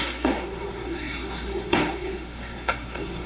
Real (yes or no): no